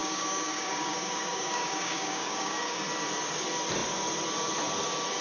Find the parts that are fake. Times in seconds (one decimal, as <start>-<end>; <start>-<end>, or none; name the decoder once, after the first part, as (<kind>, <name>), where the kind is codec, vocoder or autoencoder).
0.0-2.8 (codec, DAC)